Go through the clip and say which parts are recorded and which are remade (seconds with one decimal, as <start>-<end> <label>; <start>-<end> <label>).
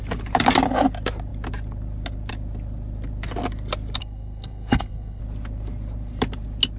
0.0-4.0 recorded; 4.0-5.2 remade; 5.2-6.8 recorded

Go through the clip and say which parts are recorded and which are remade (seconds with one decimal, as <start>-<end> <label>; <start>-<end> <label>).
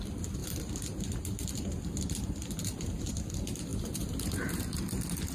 0.0-0.4 recorded; 0.4-3.1 remade; 3.1-3.7 recorded; 3.7-4.6 remade; 4.6-5.3 recorded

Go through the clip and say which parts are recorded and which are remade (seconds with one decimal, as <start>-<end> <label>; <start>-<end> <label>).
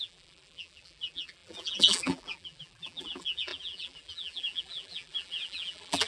0.0-6.1 remade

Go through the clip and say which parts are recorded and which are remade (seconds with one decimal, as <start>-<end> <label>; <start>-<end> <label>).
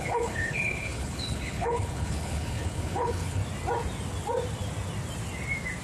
0.0-3.4 remade; 3.4-5.8 recorded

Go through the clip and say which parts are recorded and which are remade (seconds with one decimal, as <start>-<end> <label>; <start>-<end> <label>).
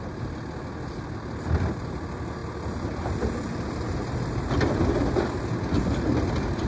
0.0-6.7 recorded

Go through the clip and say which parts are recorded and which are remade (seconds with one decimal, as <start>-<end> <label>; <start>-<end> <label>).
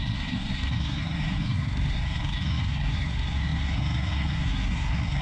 0.0-5.2 remade